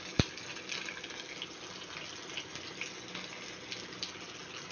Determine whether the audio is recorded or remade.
recorded